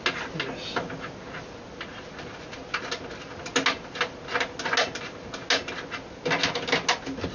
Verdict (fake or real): real